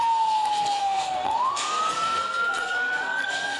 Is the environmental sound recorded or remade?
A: remade